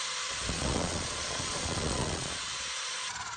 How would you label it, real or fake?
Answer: fake